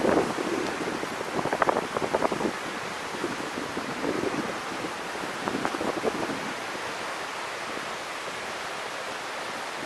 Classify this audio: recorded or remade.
recorded